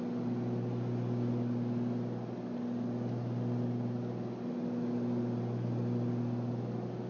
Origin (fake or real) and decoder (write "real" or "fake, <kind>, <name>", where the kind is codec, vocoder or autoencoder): real